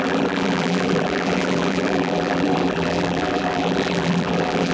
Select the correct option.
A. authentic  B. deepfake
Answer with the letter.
B